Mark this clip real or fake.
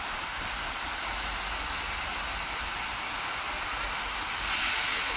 real